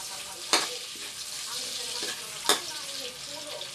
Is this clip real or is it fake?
fake